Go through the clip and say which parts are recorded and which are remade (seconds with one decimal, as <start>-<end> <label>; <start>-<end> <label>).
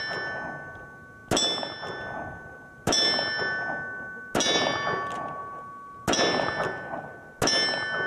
0.0-8.1 recorded